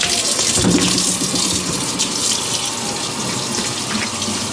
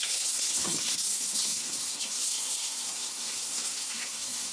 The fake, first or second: second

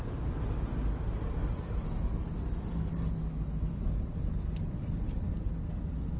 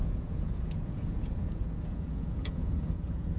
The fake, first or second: second